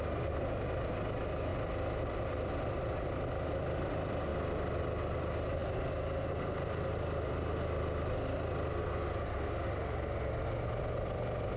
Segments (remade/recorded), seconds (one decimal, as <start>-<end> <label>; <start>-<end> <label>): 0.0-1.5 recorded; 1.5-2.5 remade; 2.5-11.6 recorded